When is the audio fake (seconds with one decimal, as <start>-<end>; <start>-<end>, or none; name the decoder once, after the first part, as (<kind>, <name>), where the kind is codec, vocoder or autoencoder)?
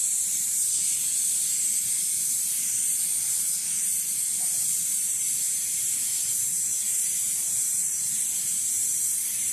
0.0-0.8 (vocoder, BigVGAN v2); 4.5-8.5